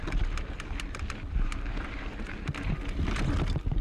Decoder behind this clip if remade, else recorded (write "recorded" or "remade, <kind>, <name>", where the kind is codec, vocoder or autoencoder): recorded